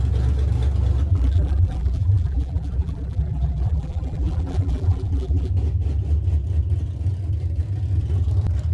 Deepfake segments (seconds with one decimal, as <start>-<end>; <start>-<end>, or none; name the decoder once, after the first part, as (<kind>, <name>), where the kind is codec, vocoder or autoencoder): 1.1-5.5 (vocoder, BigVGAN v2)

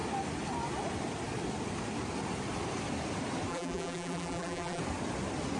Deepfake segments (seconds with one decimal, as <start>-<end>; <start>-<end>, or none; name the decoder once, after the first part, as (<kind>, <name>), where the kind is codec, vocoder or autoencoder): 3.5-4.8 (vocoder, BigVGAN v2)

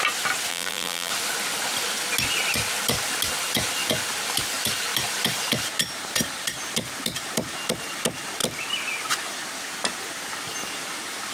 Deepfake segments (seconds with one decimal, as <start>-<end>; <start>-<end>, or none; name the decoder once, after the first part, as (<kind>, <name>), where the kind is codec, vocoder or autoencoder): 0.5-1.1 (vocoder, BigVGAN v2)